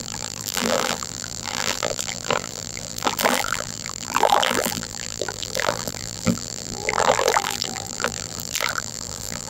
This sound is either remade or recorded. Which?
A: remade